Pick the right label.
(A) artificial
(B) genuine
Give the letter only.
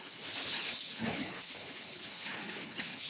A